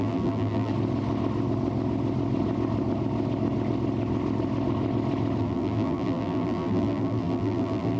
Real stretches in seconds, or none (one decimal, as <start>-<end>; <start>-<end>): 0.7-5.4